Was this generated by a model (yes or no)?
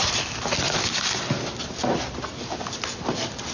yes